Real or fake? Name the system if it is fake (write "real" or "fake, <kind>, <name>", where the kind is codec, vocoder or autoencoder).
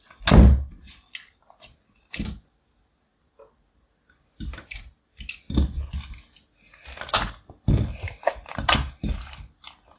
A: real